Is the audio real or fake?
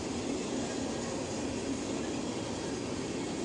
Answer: real